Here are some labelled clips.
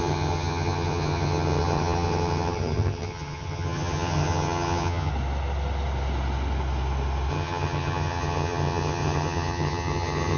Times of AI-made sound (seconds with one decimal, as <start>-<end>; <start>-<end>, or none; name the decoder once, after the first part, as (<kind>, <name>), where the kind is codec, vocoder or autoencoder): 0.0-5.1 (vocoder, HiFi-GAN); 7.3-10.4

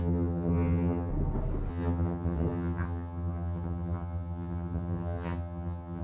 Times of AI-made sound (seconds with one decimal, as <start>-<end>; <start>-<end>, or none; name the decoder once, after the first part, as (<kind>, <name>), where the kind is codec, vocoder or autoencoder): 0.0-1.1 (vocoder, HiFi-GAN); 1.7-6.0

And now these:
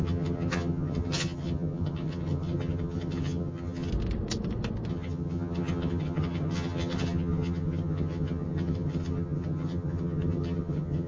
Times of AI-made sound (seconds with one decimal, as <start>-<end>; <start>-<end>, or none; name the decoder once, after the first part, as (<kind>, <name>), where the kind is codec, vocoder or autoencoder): 0.0-3.9 (vocoder, HiFi-GAN); 4.9-11.1

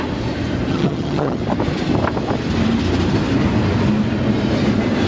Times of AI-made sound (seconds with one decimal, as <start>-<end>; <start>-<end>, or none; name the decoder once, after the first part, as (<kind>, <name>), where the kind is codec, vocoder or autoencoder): 0.7-1.4 (vocoder, HiFi-GAN)